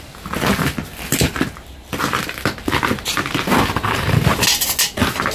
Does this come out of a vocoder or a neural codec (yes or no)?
no